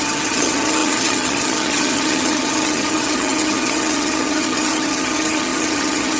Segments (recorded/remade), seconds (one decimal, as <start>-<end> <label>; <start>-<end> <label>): 0.0-6.2 remade